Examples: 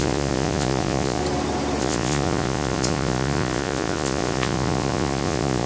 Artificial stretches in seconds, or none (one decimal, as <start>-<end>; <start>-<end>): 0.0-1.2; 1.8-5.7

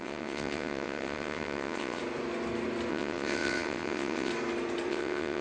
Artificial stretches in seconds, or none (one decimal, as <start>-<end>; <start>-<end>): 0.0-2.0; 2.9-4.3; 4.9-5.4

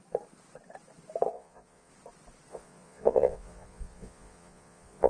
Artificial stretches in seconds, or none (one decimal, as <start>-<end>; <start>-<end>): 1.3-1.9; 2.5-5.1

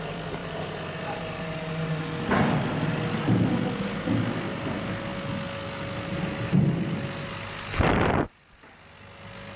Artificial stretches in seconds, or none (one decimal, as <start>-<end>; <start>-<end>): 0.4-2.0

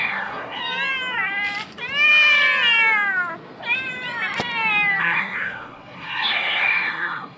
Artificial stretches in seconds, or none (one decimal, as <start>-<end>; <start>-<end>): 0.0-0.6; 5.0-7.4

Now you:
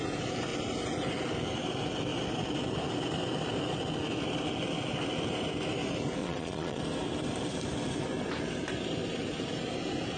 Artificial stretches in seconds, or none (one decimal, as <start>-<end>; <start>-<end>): 6.2-6.8